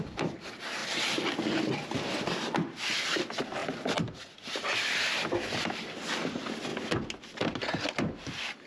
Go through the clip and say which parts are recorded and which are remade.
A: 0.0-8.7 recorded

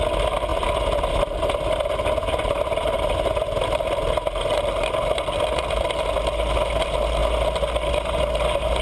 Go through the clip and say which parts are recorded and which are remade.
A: 0.0-0.5 recorded; 0.5-5.7 remade; 5.7-8.8 recorded

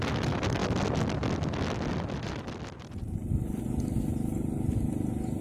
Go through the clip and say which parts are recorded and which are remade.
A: 0.0-5.4 recorded

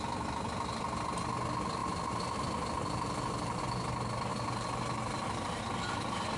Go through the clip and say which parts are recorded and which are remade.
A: 0.0-1.8 recorded; 1.8-3.6 remade; 3.6-4.3 recorded; 4.3-5.6 remade; 5.6-6.4 recorded

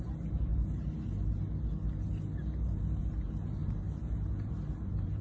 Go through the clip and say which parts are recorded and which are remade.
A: 0.0-0.5 remade; 0.5-3.0 recorded; 3.0-5.2 remade

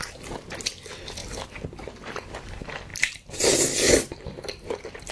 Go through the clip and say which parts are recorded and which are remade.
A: 0.0-2.9 recorded; 2.9-4.4 remade; 4.4-5.1 recorded